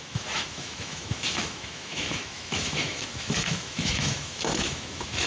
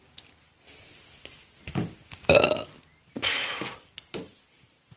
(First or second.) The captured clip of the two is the second